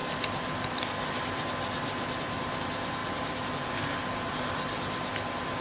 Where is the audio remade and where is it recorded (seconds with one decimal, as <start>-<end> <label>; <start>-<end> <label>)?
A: 0.0-5.6 recorded